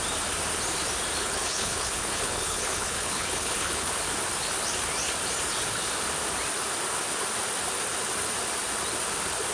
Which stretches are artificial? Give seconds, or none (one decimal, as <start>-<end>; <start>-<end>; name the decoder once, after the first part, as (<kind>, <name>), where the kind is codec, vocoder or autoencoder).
1.2-3.9 (codec, HILCodec)